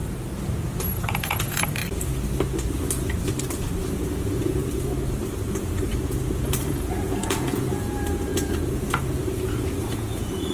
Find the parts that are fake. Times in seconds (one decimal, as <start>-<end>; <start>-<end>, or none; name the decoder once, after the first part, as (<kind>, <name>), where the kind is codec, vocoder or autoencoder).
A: 0.8-1.8 (vocoder, Vocos); 3.9-4.6; 5.5-10.5